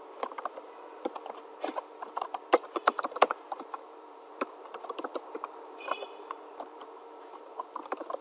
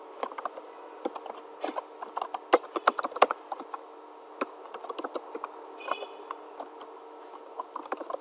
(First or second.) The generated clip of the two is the first